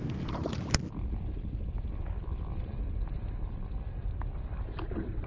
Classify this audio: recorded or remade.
recorded